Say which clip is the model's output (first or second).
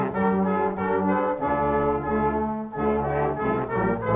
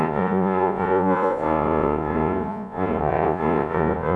second